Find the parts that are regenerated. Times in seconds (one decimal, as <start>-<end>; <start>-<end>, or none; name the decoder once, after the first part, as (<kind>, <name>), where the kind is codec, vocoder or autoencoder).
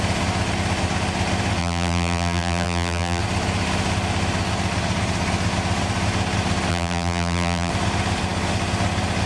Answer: 1.6-3.2 (vocoder, BigVGAN v2); 6.7-7.7